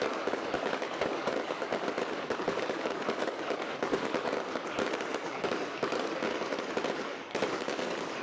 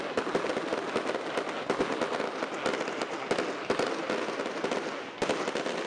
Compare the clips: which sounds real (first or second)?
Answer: second